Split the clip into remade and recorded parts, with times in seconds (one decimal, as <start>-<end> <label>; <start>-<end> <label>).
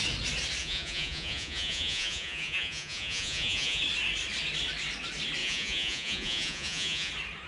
0.0-0.6 recorded; 0.6-3.8 remade; 3.8-5.4 recorded; 5.4-7.1 remade; 7.1-7.5 recorded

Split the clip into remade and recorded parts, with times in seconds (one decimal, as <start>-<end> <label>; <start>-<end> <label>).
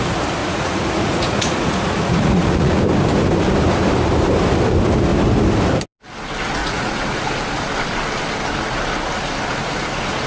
0.0-0.4 recorded; 0.4-2.8 remade; 2.8-6.6 recorded; 6.6-7.2 remade; 7.2-10.3 recorded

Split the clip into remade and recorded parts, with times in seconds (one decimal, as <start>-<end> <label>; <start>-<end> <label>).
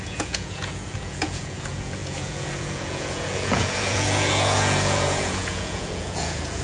0.0-6.6 remade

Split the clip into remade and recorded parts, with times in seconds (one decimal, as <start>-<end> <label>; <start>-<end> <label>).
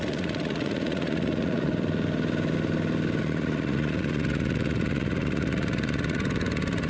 0.0-1.7 remade; 1.7-3.2 recorded; 3.2-6.9 remade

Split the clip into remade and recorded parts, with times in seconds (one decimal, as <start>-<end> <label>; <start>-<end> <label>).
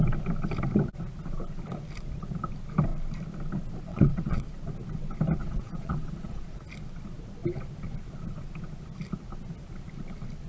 0.0-3.9 recorded; 3.9-4.5 remade; 4.5-5.4 recorded; 5.4-6.6 remade; 6.6-10.5 recorded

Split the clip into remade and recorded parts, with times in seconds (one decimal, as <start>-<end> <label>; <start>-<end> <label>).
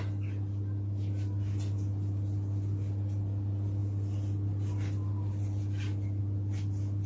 0.0-7.1 recorded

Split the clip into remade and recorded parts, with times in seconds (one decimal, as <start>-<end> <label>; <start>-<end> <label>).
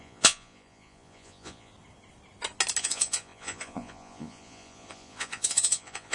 0.0-1.7 remade; 1.7-2.8 recorded; 2.8-6.1 remade